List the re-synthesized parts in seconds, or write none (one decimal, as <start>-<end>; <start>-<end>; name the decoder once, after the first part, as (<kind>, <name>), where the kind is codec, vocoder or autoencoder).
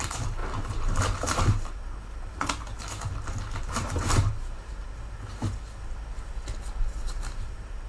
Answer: 0.0-2.7 (vocoder, BigVGAN v2); 3.6-5.4; 7.1-7.9